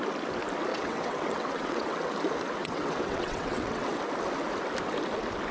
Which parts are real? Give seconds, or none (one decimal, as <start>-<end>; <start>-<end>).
0.0-0.7; 2.1-2.6; 4.0-5.5